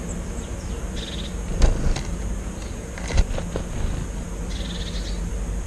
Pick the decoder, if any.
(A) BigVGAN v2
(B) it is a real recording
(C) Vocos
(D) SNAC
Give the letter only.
B